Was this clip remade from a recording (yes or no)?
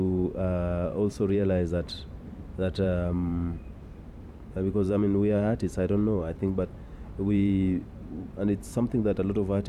yes